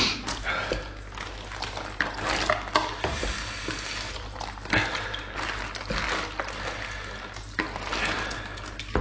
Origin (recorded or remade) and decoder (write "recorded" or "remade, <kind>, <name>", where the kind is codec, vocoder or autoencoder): recorded